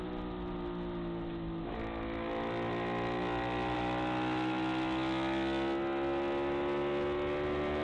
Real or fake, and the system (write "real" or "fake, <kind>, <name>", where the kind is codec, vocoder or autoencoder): real